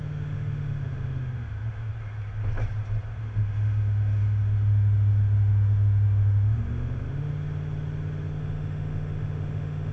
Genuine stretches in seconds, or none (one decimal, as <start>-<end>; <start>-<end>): 1.9-3.2; 7.3-8.4